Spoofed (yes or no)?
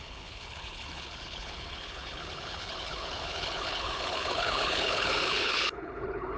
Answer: yes